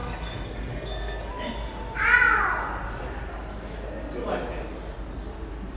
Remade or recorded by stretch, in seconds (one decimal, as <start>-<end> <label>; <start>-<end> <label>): 0.0-1.3 remade; 1.3-5.8 recorded